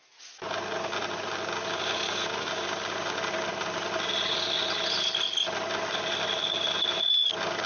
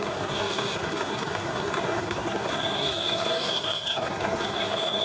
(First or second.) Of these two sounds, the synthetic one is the second